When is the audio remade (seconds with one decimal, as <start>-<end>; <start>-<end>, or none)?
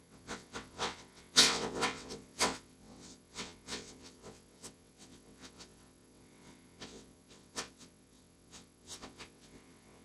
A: 0.0-10.0